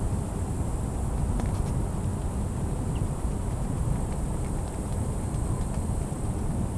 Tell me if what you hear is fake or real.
fake